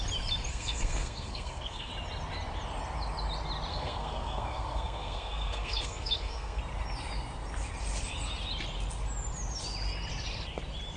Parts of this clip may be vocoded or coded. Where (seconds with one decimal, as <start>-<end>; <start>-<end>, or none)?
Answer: 0.5-1.9; 3.7-6.6